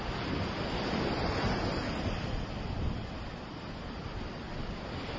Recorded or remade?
remade